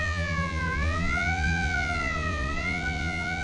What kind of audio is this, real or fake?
fake